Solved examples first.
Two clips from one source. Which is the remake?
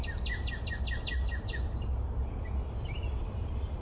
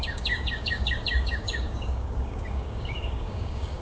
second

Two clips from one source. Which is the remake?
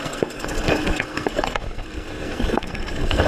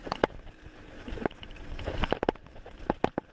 first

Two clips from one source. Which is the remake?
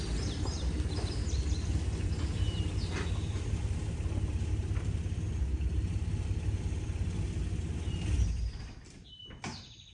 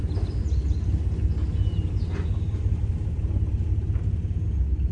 first